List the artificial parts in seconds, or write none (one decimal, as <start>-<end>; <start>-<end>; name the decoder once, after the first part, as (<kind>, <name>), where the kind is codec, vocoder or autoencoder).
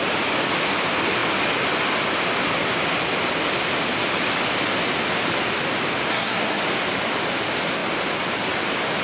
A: 6.1-6.6 (codec, SNAC)